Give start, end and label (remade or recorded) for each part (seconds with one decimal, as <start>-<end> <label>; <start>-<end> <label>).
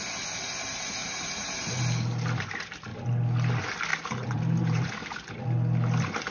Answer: 0.0-1.0 recorded; 1.0-1.7 remade; 1.7-3.9 recorded; 3.9-4.9 remade; 4.9-6.3 recorded